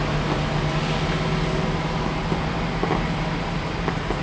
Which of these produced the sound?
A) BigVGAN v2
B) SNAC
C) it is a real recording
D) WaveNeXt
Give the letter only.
C